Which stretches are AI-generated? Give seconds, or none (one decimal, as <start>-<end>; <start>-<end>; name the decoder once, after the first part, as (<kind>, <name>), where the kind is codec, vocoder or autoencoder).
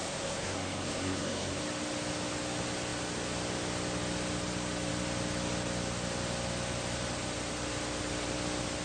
0.0-1.6 (codec, SNAC)